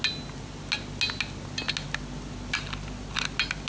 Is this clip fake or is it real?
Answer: real